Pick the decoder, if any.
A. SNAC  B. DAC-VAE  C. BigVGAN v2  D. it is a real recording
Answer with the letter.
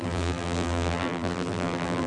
C